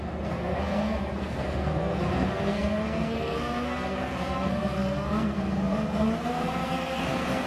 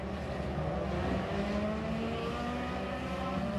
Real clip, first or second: second